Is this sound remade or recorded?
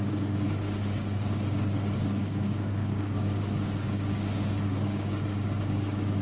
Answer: remade